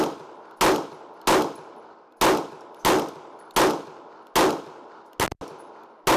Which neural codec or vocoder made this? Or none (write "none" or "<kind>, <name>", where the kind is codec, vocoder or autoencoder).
none